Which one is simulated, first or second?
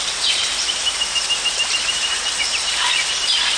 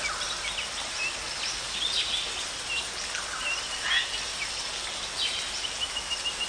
first